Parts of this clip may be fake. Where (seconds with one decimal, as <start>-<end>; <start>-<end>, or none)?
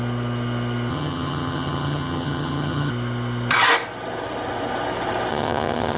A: 0.9-2.9; 5.3-6.0